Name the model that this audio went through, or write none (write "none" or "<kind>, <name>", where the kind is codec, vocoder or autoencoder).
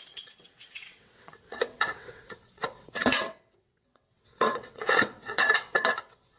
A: vocoder, WaveNeXt